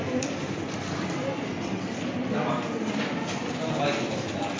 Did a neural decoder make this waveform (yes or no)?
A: no